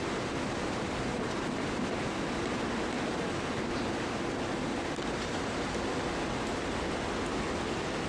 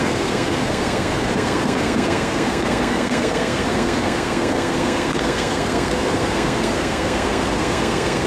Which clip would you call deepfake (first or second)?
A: second